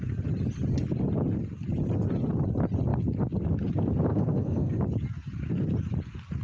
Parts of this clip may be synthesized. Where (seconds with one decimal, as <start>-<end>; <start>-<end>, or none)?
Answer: 4.1-4.8